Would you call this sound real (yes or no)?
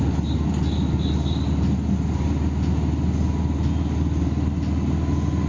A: yes